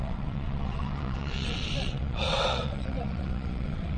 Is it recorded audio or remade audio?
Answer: remade